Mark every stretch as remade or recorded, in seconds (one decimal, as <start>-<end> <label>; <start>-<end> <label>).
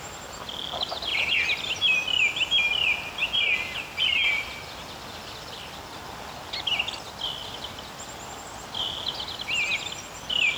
0.0-9.7 recorded; 9.7-10.6 remade